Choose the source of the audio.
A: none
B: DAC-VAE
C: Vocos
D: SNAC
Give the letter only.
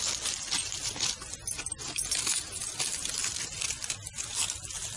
A